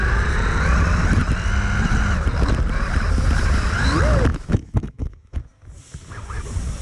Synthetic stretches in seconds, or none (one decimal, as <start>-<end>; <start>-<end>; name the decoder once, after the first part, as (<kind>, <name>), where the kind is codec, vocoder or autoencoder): 4.3-5.4 (autoencoder, DAC-VAE)